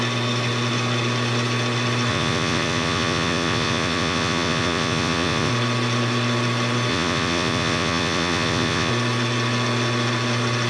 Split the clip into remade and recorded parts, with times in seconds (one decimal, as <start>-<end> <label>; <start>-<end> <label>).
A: 0.0-2.1 recorded; 2.1-5.5 remade; 5.5-6.9 recorded; 6.9-8.9 remade; 8.9-10.7 recorded